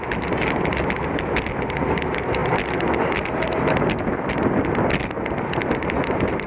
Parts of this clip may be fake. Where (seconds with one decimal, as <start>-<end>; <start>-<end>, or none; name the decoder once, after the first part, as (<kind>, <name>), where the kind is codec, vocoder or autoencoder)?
none